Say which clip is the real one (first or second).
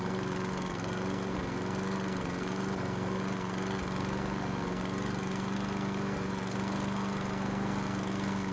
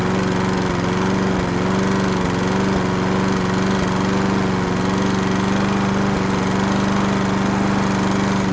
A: second